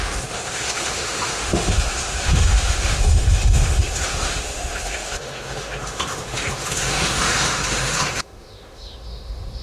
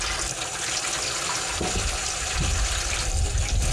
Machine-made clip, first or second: first